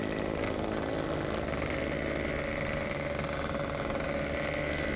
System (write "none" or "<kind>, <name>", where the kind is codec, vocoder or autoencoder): none